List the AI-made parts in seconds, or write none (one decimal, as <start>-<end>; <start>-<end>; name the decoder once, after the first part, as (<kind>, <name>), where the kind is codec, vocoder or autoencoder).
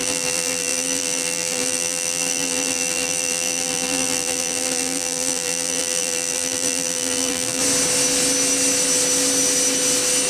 0.0-7.6 (vocoder, BigVGAN v2)